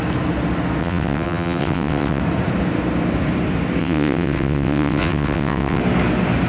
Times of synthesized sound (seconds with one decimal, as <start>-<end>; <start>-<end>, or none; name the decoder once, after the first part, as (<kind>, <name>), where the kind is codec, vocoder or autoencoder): 0.8-2.2 (vocoder, WaveNeXt); 3.8-5.8